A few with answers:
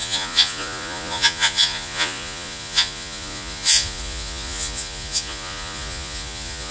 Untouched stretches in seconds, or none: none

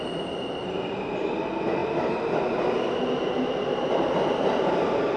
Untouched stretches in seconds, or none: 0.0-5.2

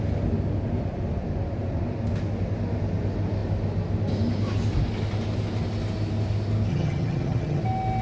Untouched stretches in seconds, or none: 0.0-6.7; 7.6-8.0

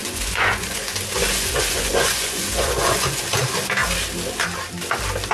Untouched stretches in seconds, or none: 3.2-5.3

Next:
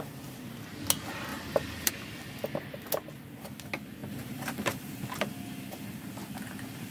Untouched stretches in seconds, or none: 0.0-1.3; 1.9-4.0; 5.0-6.9